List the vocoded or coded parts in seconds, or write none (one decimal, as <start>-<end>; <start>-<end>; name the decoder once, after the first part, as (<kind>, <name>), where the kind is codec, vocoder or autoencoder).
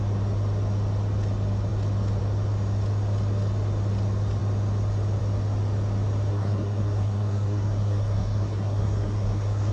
6.3-9.7 (codec, SNAC)